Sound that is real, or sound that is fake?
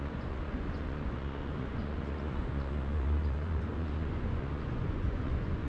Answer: fake